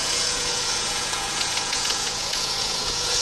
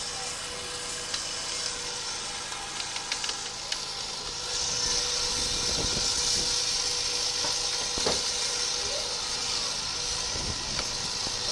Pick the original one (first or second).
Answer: second